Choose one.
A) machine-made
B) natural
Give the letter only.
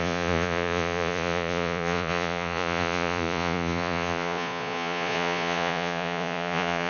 A